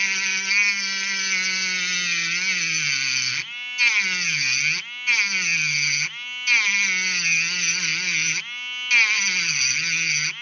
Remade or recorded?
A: recorded